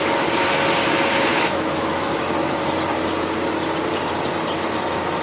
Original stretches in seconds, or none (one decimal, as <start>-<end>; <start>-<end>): 0.0-1.3; 2.3-5.2